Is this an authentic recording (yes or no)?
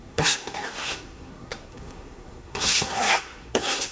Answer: no